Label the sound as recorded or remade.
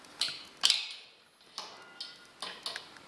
recorded